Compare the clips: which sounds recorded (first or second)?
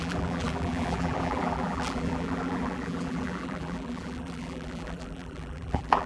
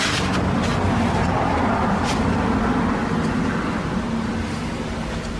second